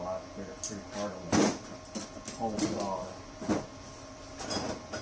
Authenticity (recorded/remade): recorded